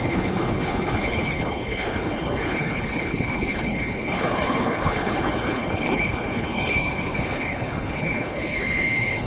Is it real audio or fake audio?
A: fake